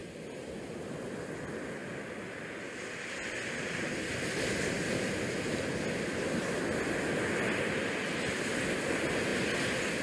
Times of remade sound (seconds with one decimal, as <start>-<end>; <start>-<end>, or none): none